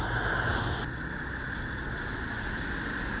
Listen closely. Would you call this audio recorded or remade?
recorded